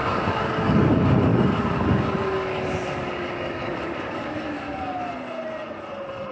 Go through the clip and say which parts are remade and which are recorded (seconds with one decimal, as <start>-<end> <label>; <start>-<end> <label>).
0.0-0.9 remade; 0.9-1.3 recorded; 1.3-5.1 remade; 5.1-6.3 recorded